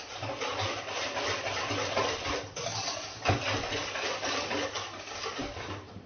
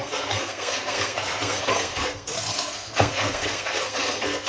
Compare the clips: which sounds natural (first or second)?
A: first